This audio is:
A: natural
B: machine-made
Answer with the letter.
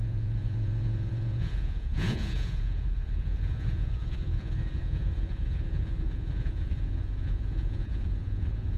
B